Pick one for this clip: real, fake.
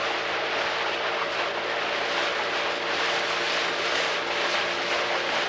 real